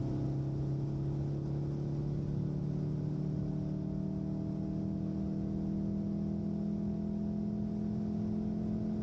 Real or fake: real